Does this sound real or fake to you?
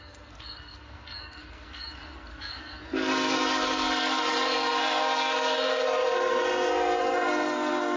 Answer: fake